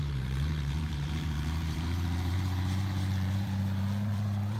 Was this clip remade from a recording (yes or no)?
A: yes